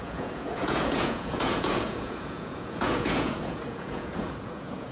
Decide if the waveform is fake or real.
fake